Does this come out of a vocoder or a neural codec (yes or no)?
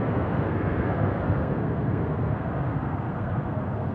yes